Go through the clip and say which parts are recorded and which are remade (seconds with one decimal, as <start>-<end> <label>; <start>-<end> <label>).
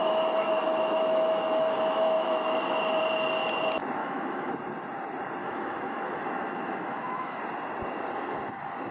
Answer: 0.0-3.0 remade; 3.0-4.0 recorded; 4.0-4.5 remade; 4.5-5.4 recorded; 5.4-7.4 remade; 7.4-8.9 recorded